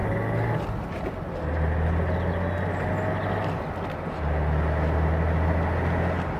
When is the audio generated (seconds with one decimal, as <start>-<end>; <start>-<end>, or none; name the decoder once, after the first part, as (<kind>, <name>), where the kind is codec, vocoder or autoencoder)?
none